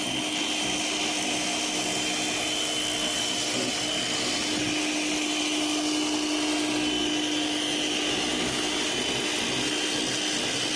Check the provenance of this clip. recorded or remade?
recorded